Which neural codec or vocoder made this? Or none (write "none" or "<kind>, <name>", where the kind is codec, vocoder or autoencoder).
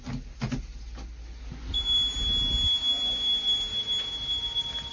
none